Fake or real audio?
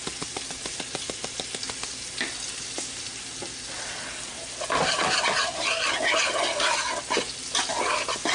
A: real